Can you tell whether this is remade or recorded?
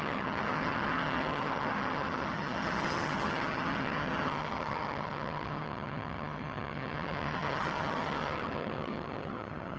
remade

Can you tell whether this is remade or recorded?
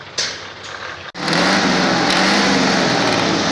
recorded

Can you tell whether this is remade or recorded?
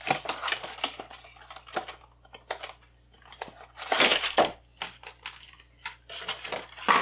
recorded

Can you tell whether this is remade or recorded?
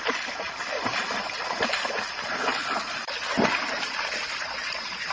recorded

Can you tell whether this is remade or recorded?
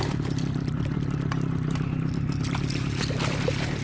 recorded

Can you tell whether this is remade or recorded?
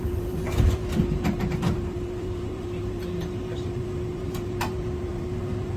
remade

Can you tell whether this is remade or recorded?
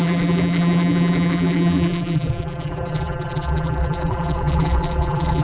remade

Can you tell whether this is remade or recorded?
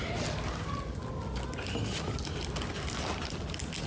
recorded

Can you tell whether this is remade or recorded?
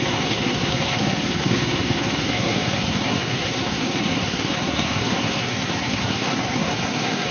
remade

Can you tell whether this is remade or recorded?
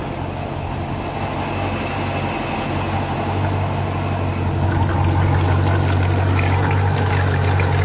recorded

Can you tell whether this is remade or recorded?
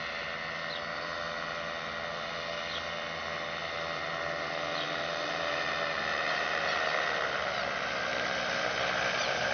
recorded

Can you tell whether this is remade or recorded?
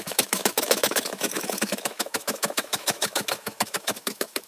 remade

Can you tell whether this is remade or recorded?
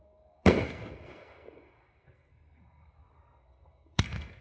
remade